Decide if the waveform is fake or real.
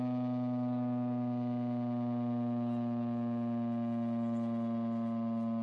real